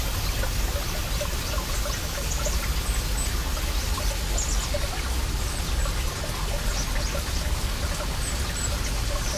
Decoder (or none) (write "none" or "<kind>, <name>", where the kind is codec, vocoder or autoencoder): none